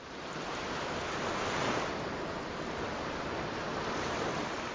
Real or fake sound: real